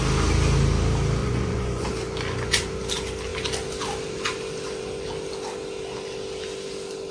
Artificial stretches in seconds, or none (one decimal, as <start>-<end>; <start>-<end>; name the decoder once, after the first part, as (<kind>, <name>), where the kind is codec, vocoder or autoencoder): 1.2-1.9 (vocoder, Vocos)